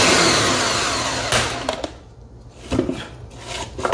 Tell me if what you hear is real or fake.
real